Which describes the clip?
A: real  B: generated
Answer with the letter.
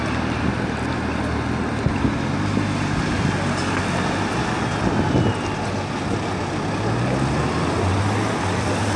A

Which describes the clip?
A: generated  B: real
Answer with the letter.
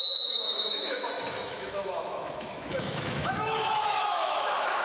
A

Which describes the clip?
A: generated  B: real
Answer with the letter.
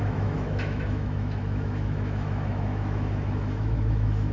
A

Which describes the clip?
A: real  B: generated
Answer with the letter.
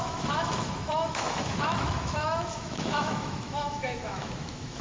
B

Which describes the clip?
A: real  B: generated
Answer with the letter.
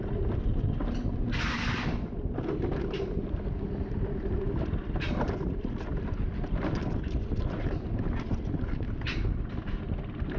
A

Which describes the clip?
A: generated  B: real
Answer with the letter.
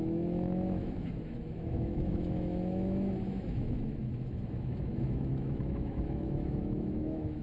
A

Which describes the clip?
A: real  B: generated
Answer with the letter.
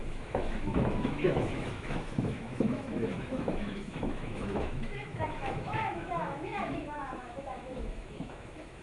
B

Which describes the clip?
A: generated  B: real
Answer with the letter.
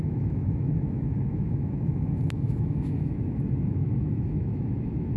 A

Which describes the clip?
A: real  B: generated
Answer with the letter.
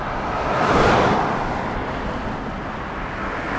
A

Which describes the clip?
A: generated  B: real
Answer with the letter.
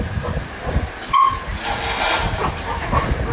B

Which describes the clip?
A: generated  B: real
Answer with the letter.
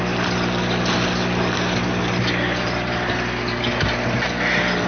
B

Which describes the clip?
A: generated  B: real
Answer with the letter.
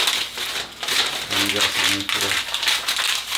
B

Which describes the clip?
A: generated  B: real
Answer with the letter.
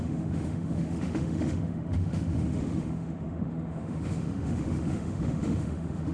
A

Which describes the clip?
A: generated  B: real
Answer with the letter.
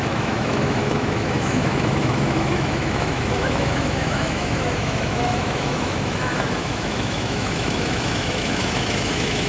A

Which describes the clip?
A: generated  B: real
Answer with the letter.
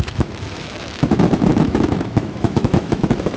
A